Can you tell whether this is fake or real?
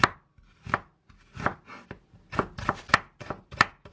real